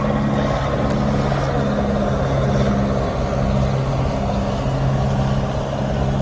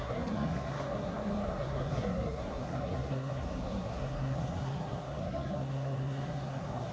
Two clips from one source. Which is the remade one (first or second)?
second